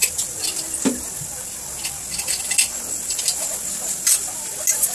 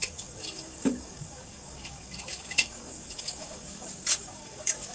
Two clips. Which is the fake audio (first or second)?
second